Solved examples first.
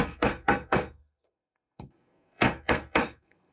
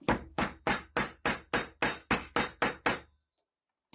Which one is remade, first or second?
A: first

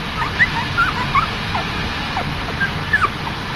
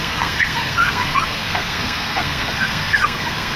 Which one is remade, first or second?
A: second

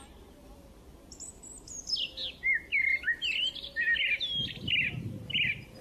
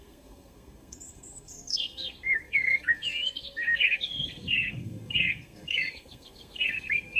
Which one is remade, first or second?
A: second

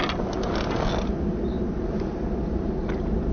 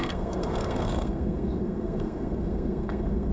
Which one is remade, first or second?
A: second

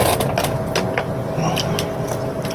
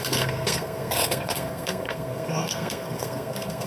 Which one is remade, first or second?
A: second